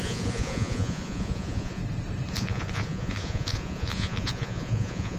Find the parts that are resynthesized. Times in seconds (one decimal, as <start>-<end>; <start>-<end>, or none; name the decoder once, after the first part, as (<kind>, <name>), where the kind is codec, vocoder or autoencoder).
0.0-1.8 (vocoder, Vocos); 2.3-5.2